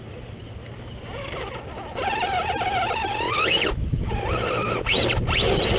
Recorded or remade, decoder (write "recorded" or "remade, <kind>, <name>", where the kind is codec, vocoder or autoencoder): recorded